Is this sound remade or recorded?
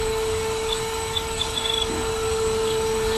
remade